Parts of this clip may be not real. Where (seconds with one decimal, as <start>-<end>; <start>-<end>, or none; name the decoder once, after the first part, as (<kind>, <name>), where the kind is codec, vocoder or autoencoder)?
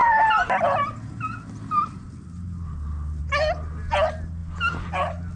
4.4-4.9 (vocoder, BigVGAN v2)